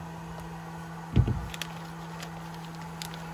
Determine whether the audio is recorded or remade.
recorded